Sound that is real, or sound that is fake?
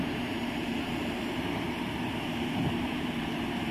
fake